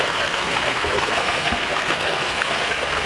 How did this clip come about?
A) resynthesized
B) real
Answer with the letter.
A